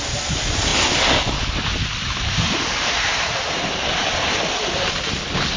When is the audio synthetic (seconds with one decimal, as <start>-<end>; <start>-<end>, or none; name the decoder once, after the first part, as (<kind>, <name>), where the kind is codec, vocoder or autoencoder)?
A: none